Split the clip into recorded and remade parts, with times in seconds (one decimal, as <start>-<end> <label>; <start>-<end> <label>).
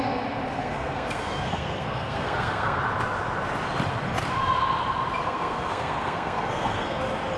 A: 0.0-0.6 recorded; 0.6-2.8 remade; 2.8-5.2 recorded; 5.2-7.0 remade; 7.0-7.4 recorded